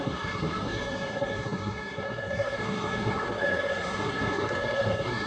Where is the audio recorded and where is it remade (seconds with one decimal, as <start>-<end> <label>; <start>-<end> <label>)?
0.0-5.3 remade